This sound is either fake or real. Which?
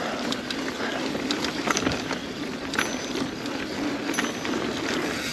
real